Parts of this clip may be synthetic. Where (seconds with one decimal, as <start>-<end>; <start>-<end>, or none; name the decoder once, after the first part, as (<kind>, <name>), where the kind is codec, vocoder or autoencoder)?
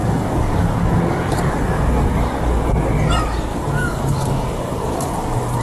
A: 0.0-2.4 (codec, DAC); 3.5-5.6